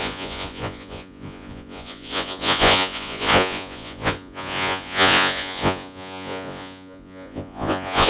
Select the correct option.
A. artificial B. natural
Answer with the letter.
A